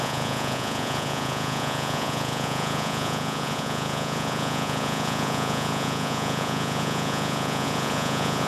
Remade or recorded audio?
remade